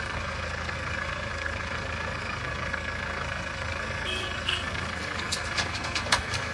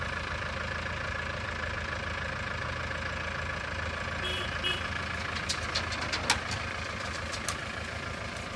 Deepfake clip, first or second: first